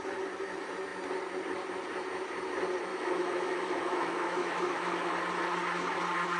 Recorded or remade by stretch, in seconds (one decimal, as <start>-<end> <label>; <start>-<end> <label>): 0.0-2.9 recorded; 2.9-5.1 remade; 5.1-6.4 recorded